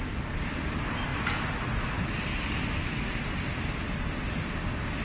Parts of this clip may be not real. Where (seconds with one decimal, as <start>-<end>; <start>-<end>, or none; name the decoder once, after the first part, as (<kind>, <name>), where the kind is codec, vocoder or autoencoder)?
none